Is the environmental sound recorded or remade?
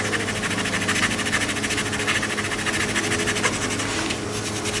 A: recorded